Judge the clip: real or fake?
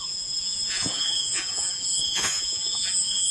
fake